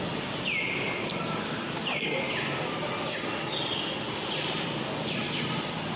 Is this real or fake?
real